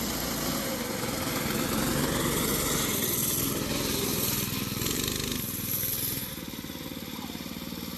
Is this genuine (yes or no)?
yes